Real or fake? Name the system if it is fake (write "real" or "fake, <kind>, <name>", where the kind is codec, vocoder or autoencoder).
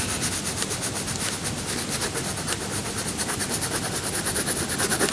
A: real